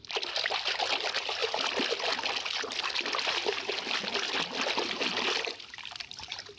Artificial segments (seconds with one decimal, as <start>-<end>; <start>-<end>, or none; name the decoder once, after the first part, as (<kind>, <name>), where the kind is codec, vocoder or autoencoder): none

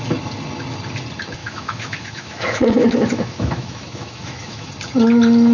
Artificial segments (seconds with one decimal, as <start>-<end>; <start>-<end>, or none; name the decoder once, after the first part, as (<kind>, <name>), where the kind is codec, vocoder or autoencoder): 1.4-4.7 (autoencoder, DAC-VAE)

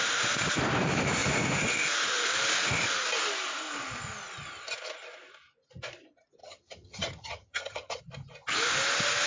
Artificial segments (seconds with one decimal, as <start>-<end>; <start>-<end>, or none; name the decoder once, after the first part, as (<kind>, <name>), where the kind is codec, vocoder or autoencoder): 6.4-8.0 (vocoder, HiFi-GAN)

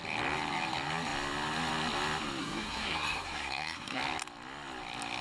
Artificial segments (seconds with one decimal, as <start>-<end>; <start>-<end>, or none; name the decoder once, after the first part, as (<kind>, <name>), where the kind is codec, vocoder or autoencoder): 2.4-4.0 (codec, SNAC)

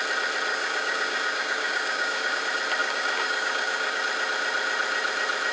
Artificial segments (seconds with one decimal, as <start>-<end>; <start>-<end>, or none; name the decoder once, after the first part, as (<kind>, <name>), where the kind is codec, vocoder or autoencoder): 0.5-2.4 (codec, DAC); 2.8-4.0